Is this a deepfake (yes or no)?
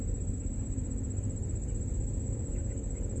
no